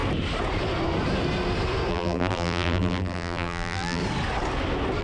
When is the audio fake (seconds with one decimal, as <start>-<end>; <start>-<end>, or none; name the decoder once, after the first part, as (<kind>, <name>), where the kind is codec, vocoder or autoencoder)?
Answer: 1.9-4.0 (vocoder, BigVGAN v2)